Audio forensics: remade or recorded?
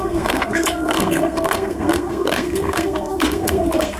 remade